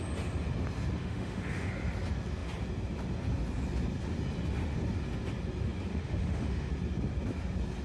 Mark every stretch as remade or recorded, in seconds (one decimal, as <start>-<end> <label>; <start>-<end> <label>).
0.0-1.0 recorded; 1.0-1.7 remade; 1.7-5.9 recorded; 5.9-6.7 remade; 6.7-7.8 recorded